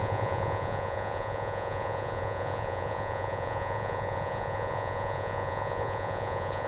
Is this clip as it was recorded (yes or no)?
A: no